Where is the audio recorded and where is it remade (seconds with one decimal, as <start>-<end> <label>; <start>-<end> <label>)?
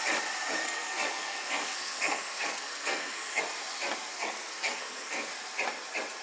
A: 0.0-0.6 recorded; 0.6-3.4 remade; 3.4-4.1 recorded; 4.1-5.3 remade; 5.3-6.2 recorded